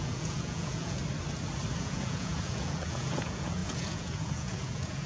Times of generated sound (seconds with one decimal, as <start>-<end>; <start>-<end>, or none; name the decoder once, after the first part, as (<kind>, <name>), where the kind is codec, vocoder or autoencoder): 0.0-1.0 (vocoder, Vocos); 1.8-5.1